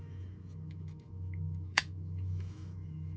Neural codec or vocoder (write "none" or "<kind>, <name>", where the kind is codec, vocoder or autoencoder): autoencoder, DAC-VAE